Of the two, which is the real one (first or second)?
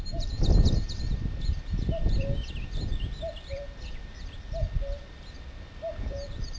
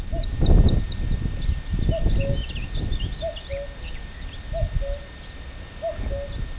second